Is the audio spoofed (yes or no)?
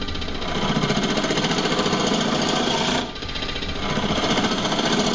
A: no